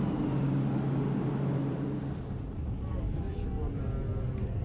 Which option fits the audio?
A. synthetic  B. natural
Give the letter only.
B